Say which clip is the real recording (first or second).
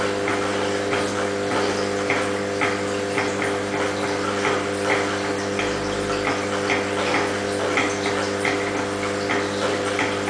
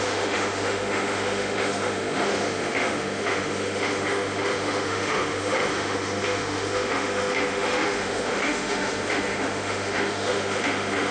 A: first